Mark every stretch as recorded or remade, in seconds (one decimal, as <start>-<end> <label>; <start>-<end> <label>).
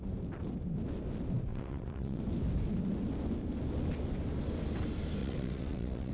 0.0-1.5 recorded; 1.5-2.2 remade; 2.2-5.2 recorded; 5.2-6.1 remade